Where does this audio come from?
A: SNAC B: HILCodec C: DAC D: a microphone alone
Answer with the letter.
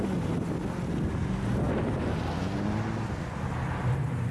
D